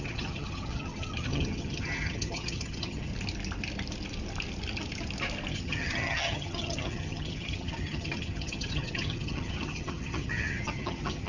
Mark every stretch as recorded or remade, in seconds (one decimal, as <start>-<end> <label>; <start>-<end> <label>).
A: 0.0-3.1 remade; 3.1-5.5 recorded; 5.5-11.3 remade

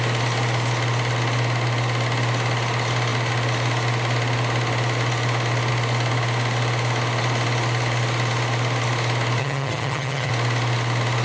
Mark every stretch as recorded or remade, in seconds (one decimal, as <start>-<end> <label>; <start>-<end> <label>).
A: 0.0-9.4 recorded; 9.4-10.3 remade; 10.3-11.2 recorded